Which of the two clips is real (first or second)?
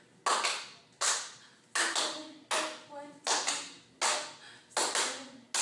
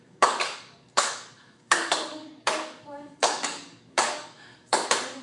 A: first